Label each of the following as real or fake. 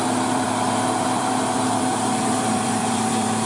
fake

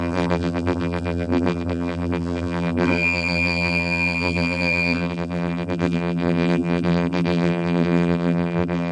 fake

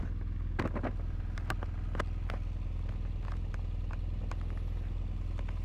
real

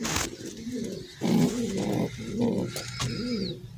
real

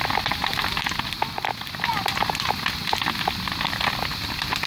real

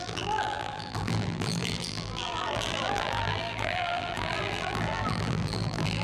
fake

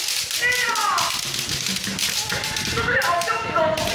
real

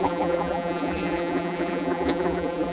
fake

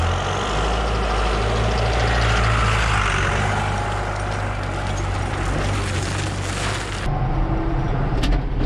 real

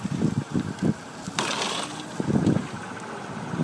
real